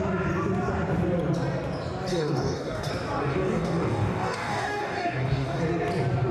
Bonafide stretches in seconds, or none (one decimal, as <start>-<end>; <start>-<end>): 0.0-2.1; 2.9-3.3; 5.6-6.3